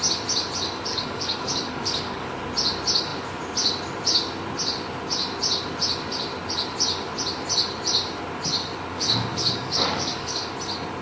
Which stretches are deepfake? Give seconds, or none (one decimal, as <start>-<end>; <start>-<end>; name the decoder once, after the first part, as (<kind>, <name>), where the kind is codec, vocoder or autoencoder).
0.9-2.3 (codec, DAC); 8.9-10.5